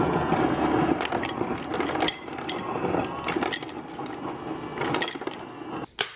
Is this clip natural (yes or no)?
yes